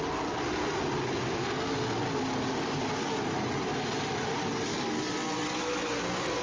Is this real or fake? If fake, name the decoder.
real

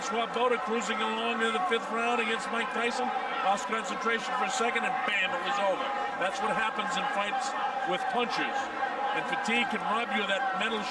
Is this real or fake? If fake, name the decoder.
real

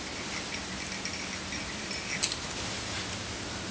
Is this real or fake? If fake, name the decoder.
real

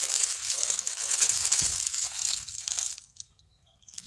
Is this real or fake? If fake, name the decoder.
fake, codec, SNAC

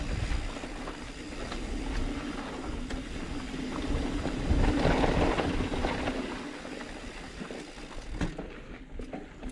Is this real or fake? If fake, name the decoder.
real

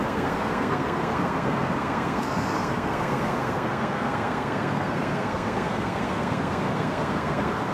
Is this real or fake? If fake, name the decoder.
fake, codec, SNAC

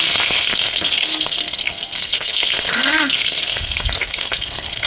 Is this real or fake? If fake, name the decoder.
fake, codec, SNAC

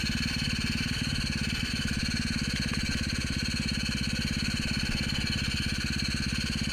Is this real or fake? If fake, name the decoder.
real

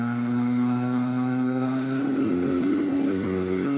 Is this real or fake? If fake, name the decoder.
fake, codec, SNAC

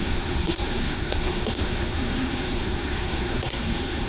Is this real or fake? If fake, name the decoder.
fake, codec, SNAC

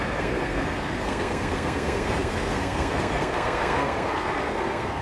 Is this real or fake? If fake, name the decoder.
fake, codec, SNAC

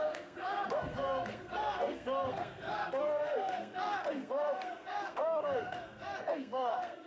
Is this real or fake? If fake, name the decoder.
fake, codec, SNAC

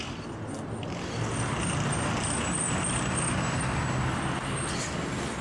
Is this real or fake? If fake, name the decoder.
real